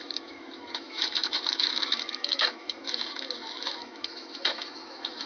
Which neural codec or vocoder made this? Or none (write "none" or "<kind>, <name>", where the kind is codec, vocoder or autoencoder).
autoencoder, DAC-VAE